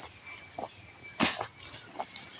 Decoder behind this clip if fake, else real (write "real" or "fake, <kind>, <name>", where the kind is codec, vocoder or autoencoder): real